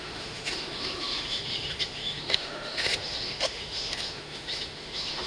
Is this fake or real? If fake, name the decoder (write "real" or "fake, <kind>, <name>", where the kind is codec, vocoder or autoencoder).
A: fake, autoencoder, DAC-VAE